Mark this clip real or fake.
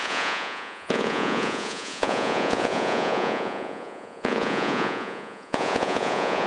fake